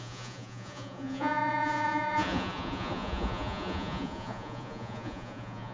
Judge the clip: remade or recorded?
remade